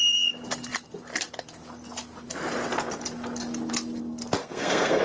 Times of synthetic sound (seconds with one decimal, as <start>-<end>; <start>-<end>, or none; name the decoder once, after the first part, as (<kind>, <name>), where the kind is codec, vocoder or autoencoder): 4.4-5.0 (codec, SNAC)